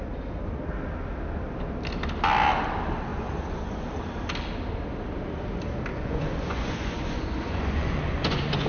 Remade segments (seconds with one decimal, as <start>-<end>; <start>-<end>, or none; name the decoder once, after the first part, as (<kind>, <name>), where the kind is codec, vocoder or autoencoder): 3.1-3.8 (vocoder, Vocos); 5.9-8.7